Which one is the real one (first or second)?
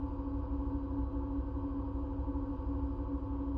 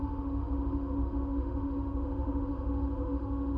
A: first